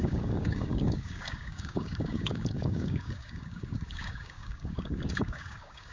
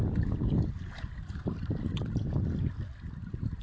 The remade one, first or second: first